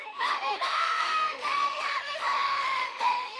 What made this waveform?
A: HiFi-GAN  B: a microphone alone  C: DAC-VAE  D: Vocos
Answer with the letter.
C